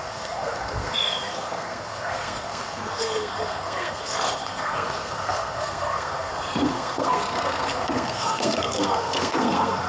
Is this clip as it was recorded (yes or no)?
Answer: no